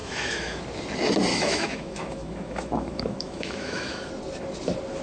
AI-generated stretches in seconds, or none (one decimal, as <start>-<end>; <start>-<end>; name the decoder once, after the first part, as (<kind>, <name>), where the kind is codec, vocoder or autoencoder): 0.0-0.6 (autoencoder, DAC-VAE); 1.3-4.1